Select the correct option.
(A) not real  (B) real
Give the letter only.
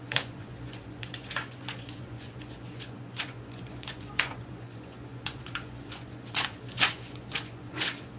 A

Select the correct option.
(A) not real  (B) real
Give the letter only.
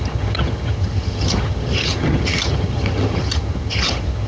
A